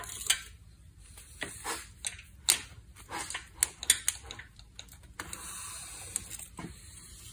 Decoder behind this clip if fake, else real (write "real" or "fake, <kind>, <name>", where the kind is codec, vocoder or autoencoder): real